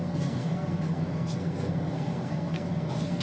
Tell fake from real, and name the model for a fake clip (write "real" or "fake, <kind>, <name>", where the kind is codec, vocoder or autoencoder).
fake, codec, SNAC